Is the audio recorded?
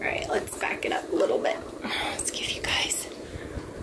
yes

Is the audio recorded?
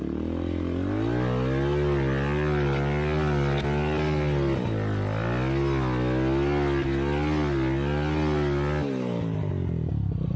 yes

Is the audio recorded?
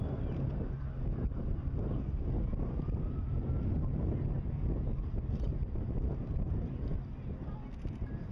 yes